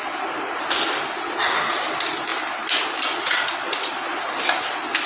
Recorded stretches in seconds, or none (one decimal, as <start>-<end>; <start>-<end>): 0.0-5.1